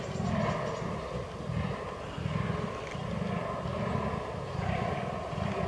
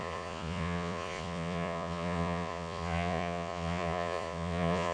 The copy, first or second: second